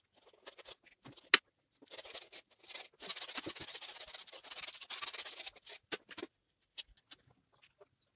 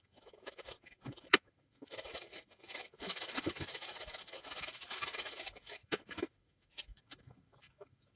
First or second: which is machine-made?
second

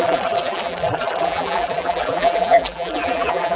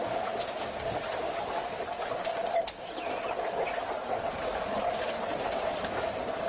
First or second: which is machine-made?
first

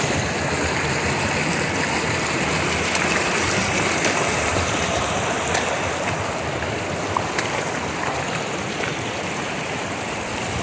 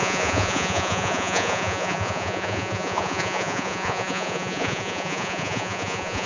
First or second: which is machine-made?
second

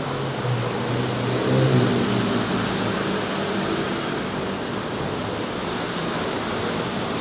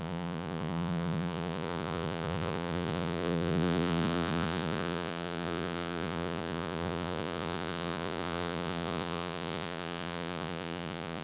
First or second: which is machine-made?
second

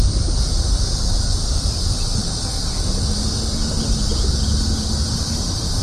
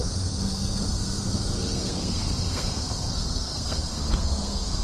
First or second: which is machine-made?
second